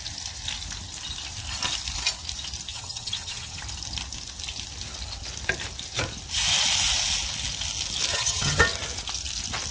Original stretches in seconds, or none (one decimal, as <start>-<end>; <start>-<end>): 0.0-2.7; 3.6-8.1; 8.6-9.7